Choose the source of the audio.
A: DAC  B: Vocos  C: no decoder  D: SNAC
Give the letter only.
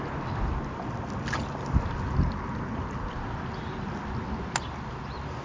C